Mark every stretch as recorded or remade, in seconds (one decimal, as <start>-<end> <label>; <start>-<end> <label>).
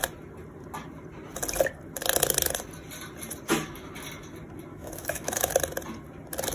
0.0-4.7 recorded; 4.7-5.5 remade; 5.5-6.5 recorded